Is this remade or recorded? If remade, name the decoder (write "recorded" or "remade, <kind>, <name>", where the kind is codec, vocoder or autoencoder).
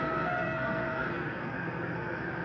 remade, codec, SNAC